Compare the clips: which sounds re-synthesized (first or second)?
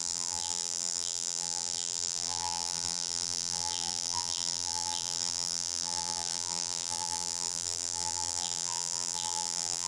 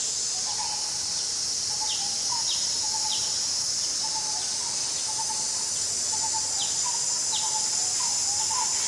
first